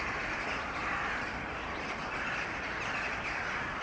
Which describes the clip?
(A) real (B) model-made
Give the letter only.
A